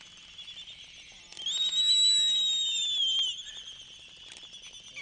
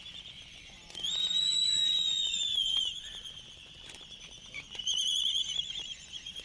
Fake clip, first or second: second